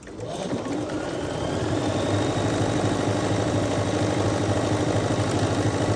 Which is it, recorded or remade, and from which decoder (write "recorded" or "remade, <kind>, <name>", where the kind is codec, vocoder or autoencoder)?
remade, vocoder, BigVGAN v2